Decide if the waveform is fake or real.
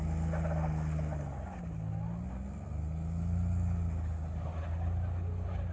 real